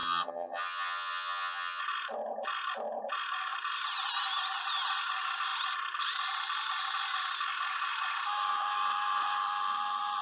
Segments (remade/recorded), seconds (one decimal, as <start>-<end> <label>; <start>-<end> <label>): 0.0-1.8 remade; 1.8-10.2 recorded